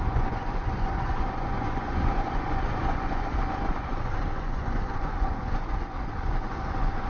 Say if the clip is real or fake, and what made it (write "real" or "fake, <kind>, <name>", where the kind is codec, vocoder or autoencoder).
fake, vocoder, Vocos